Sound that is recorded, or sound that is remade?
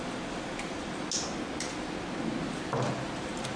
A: recorded